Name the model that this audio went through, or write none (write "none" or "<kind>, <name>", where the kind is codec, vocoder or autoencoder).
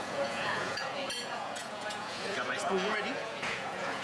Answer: vocoder, Vocos